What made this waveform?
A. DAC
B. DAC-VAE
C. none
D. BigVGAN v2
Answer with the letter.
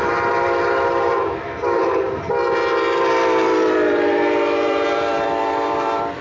D